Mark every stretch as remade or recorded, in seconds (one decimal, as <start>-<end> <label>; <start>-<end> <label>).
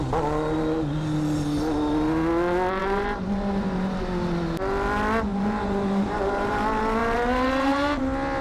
0.0-2.8 recorded; 2.8-3.9 remade; 3.9-5.3 recorded; 5.3-6.6 remade; 6.6-7.0 recorded; 7.0-8.0 remade; 8.0-8.4 recorded